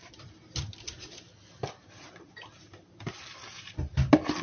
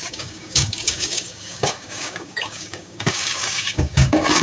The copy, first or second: second